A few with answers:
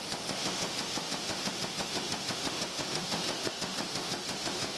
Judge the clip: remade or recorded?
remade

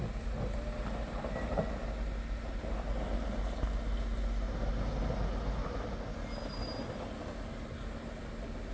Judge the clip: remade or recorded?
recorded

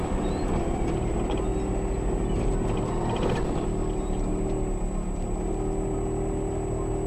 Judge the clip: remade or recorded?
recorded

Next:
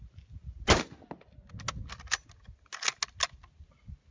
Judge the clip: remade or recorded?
recorded